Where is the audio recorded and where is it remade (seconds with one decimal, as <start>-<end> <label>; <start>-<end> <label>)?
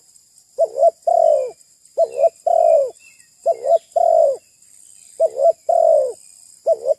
0.0-7.0 recorded